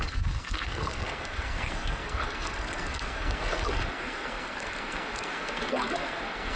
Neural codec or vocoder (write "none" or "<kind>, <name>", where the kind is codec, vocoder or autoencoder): codec, SNAC